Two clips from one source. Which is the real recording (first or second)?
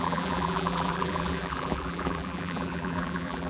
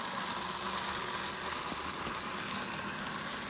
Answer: second